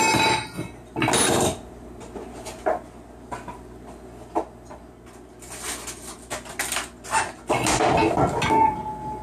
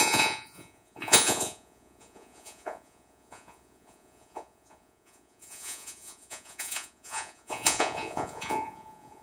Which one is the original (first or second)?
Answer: first